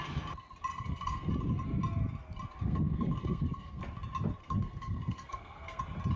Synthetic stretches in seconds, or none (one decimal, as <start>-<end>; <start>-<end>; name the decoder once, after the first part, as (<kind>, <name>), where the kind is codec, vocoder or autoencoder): 0.7-1.3 (codec, SNAC); 2.6-3.8; 4.4-5.8